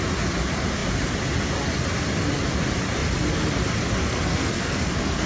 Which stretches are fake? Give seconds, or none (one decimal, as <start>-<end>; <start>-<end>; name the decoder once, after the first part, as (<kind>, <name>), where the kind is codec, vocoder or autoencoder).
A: 4.0-5.3 (codec, SNAC)